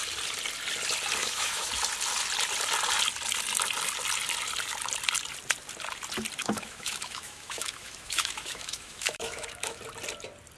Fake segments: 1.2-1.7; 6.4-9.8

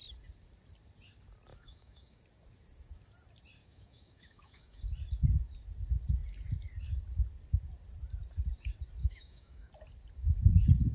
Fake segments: 1.5-2.2; 3.6-4.8; 9.0-9.7

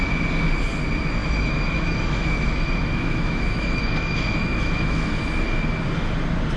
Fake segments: 1.2-5.2

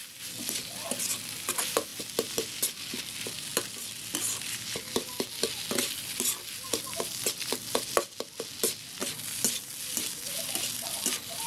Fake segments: none

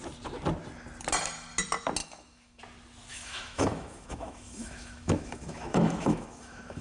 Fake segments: 2.0-2.6; 3.1-6.8

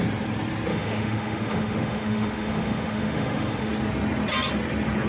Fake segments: 0.7-3.7